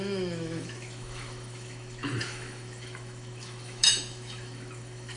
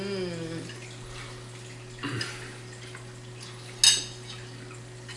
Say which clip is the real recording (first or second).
second